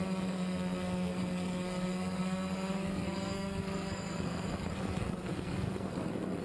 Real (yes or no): no